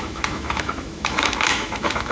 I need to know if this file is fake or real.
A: fake